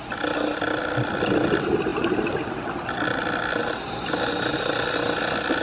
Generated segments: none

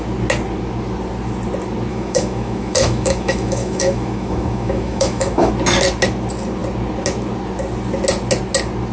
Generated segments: 1.9-5.5 (autoencoder, DAC-VAE)

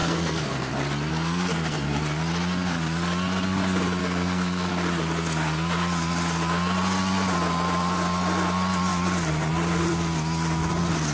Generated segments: 0.0-0.7 (codec, SNAC); 1.1-2.0; 4.0-4.7

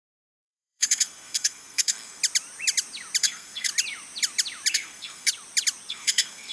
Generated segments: 0.0-2.2 (codec, SNAC); 3.2-3.7; 4.7-5.3; 5.9-6.5